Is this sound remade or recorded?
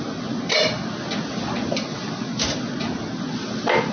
recorded